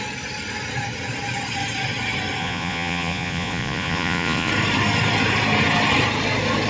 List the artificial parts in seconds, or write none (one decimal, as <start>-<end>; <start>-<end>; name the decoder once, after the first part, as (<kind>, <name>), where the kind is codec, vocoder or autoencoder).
2.4-4.5 (vocoder, Vocos)